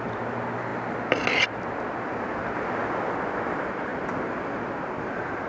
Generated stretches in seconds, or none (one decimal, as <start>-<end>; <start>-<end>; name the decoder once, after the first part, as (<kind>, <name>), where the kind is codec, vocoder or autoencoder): none